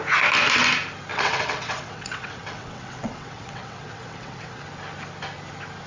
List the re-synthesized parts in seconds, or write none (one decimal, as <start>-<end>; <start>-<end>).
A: 1.1-4.6